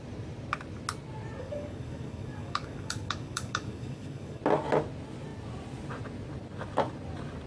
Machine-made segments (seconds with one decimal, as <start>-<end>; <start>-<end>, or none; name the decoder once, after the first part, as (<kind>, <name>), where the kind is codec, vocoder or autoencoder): 1.4-4.4 (codec, DAC)